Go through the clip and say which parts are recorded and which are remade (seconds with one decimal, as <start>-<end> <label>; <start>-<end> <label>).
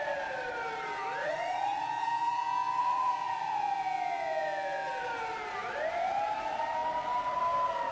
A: 0.0-1.2 recorded; 1.2-1.8 remade; 1.8-2.8 recorded; 2.8-3.6 remade; 3.6-7.9 recorded